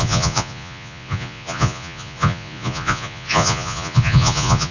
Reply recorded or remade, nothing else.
remade